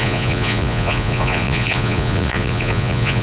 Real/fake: fake